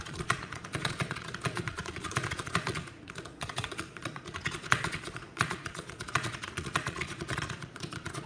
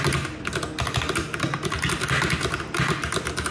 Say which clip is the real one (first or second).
second